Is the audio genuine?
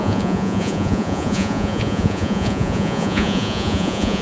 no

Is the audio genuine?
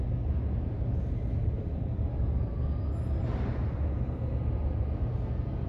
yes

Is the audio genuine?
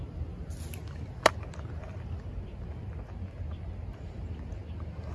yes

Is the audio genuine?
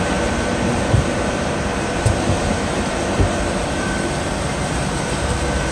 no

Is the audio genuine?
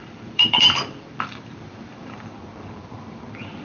no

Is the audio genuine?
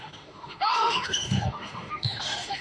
no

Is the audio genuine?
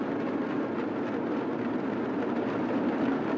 yes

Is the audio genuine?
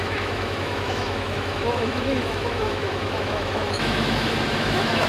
no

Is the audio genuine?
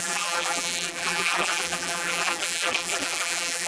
no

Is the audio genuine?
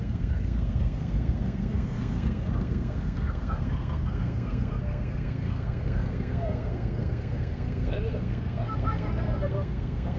no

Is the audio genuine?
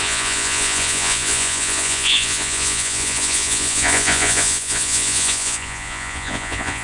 no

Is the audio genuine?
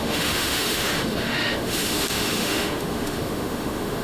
no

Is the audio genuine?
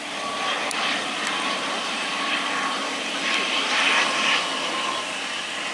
no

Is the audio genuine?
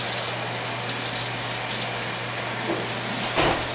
yes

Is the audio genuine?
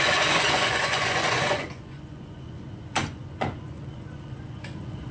no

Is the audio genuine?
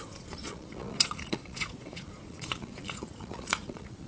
no